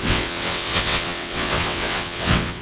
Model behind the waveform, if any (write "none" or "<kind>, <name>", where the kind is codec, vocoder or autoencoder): vocoder, WaveNeXt